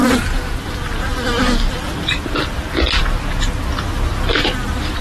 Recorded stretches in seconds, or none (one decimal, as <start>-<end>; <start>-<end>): 0.7-5.0